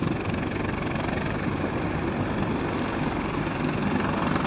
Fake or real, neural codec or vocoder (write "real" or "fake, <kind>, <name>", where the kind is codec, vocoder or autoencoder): real